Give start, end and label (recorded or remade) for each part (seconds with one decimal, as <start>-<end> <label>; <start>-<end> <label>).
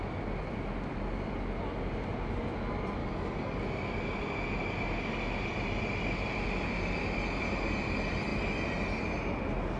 0.0-3.0 recorded; 3.0-3.6 remade; 3.6-9.8 recorded